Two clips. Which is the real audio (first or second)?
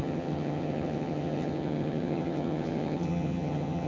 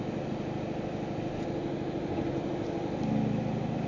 second